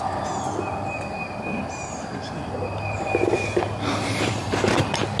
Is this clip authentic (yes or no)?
yes